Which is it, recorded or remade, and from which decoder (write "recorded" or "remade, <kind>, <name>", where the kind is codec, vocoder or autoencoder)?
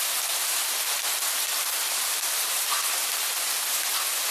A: recorded